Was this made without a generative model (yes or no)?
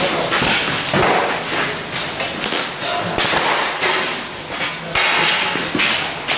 yes